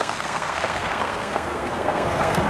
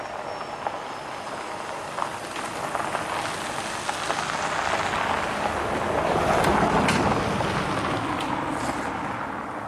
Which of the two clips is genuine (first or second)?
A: second